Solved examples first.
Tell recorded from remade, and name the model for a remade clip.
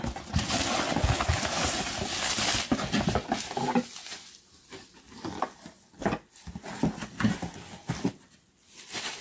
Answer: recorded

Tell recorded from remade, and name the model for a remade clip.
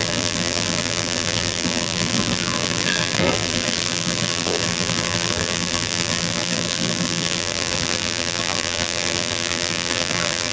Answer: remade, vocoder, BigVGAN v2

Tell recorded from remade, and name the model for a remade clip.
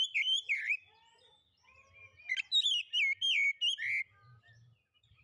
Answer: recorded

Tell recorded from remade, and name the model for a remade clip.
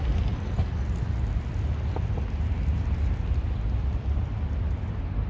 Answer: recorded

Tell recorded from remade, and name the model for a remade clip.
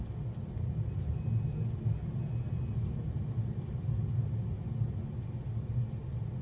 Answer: recorded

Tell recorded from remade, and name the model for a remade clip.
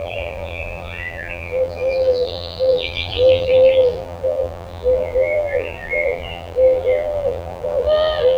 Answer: remade, vocoder, BigVGAN v2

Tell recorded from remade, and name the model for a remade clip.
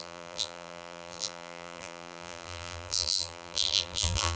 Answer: remade, vocoder, BigVGAN v2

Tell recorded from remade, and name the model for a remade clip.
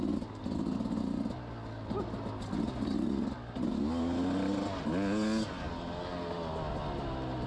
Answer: recorded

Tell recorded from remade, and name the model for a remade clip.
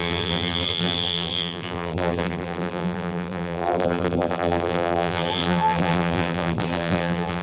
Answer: remade, vocoder, BigVGAN v2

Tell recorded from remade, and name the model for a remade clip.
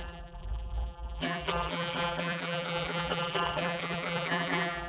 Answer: remade, vocoder, BigVGAN v2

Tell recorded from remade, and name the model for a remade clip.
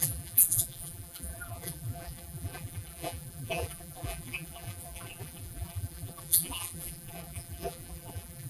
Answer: remade, vocoder, BigVGAN v2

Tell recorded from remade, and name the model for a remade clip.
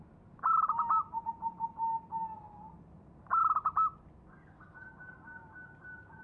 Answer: recorded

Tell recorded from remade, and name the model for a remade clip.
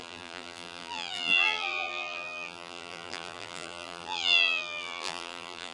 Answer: remade, vocoder, BigVGAN v2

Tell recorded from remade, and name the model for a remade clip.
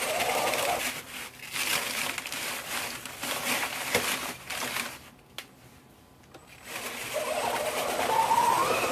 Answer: recorded